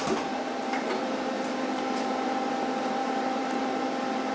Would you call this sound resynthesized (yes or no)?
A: yes